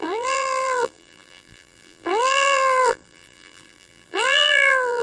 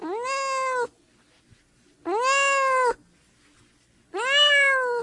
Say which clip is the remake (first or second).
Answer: first